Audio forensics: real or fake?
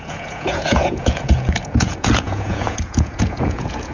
fake